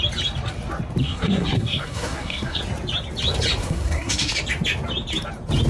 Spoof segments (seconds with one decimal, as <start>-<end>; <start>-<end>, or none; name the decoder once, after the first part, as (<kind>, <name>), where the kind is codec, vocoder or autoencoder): 1.0-2.6 (codec, SNAC); 3.6-4.3

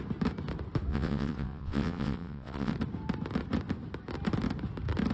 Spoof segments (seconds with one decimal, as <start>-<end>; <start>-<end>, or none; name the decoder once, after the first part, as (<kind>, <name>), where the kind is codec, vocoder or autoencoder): 0.9-2.7 (vocoder, WaveNeXt)

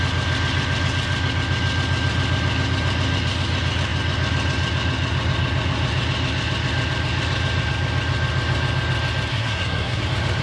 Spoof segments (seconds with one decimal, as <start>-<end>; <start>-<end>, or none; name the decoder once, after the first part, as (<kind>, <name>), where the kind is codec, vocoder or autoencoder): 9.3-10.0 (codec, SNAC)